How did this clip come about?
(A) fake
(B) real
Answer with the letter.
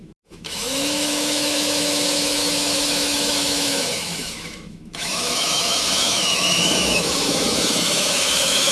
A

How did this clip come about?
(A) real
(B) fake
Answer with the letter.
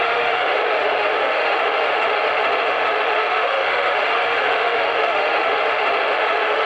B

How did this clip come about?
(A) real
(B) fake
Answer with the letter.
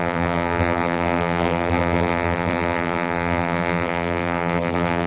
B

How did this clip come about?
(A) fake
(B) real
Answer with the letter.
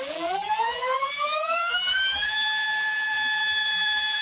A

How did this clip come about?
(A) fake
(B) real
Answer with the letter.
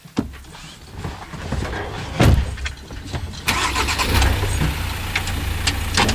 B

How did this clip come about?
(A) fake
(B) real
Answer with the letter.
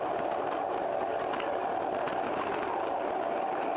B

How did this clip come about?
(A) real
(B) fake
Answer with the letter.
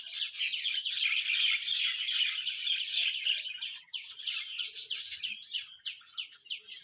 A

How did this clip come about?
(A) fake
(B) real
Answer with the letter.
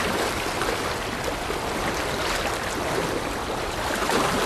B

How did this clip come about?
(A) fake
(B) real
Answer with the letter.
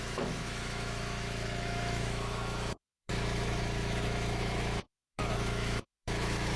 A